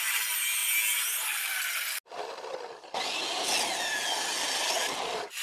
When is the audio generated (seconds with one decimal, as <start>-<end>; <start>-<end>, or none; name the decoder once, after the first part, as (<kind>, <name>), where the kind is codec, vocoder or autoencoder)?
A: none